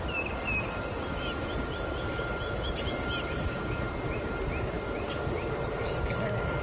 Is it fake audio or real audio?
real